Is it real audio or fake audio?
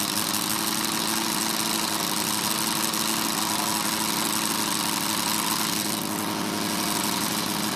real